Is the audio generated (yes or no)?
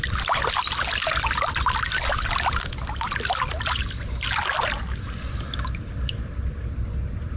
no